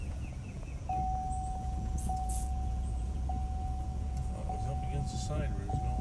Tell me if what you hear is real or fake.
fake